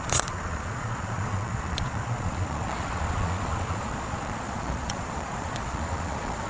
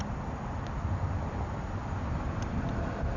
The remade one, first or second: first